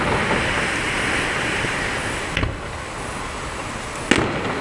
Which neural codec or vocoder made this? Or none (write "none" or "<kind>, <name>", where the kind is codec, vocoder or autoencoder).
none